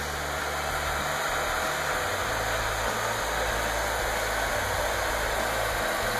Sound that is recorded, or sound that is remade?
recorded